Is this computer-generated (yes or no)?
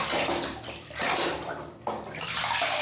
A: yes